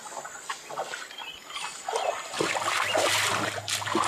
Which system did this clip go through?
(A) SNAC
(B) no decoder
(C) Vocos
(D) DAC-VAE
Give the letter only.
B